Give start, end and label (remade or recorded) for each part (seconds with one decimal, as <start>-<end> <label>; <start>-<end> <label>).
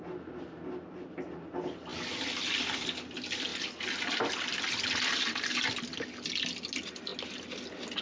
0.0-8.0 recorded